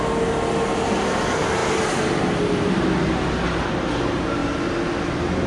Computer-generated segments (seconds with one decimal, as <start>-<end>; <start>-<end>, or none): none